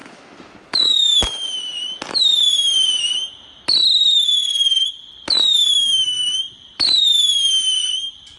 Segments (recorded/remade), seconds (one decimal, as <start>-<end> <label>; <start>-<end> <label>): 0.0-1.2 remade; 1.2-5.7 recorded; 5.7-6.4 remade; 6.4-8.4 recorded